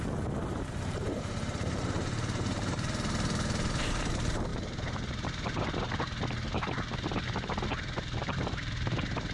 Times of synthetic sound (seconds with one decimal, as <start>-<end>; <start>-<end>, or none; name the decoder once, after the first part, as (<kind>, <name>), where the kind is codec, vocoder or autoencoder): 0.4-4.1 (vocoder, BigVGAN v2); 4.5-6.0; 8.2-8.7